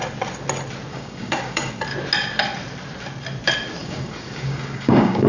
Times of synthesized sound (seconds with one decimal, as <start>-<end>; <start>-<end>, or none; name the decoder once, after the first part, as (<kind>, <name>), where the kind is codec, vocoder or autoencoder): 0.9-1.7 (codec, DAC); 3.8-5.3